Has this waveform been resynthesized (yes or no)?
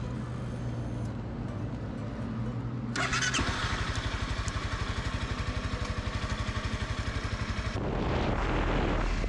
no